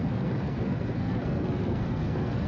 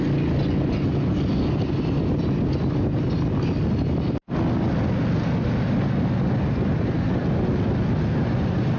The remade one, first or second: first